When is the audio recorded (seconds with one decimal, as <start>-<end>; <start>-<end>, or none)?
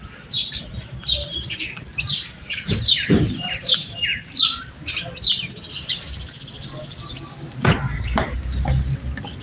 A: 0.0-9.4